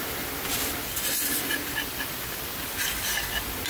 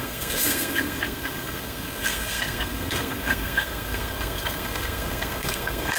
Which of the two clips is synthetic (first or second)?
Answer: second